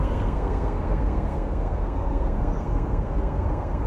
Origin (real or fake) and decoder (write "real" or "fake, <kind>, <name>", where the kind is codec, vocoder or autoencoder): fake, codec, SNAC